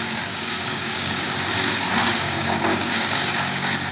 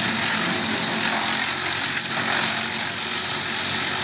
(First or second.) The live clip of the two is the second